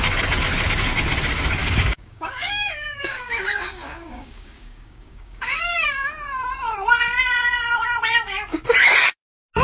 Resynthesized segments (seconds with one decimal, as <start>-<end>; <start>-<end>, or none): 1.6-6.1